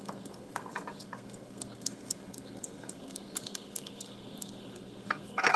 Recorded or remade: remade